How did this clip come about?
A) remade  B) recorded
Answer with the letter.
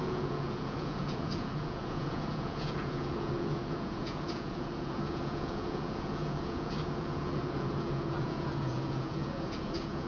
A